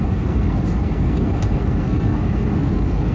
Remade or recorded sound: remade